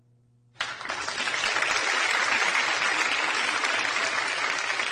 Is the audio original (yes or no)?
yes